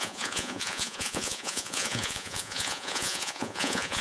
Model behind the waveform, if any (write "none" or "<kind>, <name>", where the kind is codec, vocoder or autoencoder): vocoder, Vocos